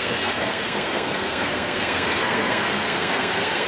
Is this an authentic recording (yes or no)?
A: no